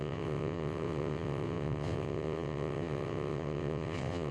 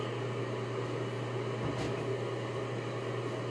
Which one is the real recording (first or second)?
second